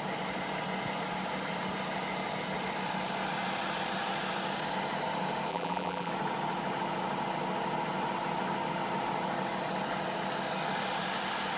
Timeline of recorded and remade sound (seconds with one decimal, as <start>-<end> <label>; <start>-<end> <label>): 0.0-5.5 recorded; 5.5-6.1 remade; 6.1-11.6 recorded